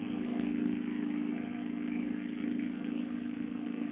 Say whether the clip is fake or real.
fake